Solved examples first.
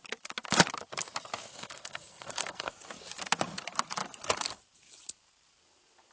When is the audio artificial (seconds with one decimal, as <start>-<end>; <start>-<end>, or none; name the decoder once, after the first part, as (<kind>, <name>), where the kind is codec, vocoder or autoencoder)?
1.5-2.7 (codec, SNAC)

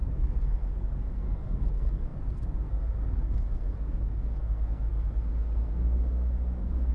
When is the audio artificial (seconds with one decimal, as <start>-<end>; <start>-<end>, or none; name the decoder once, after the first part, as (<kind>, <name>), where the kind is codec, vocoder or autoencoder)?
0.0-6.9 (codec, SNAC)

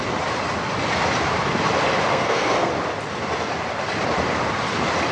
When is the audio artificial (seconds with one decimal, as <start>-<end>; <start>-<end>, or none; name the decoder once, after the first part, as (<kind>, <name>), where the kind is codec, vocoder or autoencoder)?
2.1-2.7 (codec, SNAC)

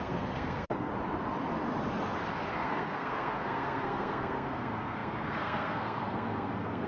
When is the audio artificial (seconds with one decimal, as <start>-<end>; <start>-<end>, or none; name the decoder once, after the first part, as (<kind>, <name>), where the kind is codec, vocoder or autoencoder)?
0.0-0.9 (codec, SNAC); 2.5-6.9